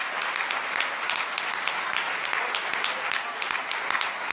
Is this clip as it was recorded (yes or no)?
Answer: yes